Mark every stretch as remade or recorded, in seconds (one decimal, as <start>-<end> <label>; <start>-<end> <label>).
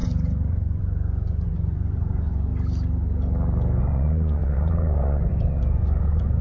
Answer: 0.0-2.5 remade; 2.5-3.8 recorded; 3.8-6.4 remade